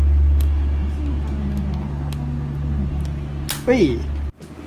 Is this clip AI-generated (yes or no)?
no